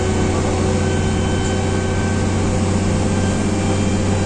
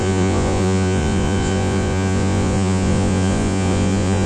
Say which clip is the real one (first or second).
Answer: first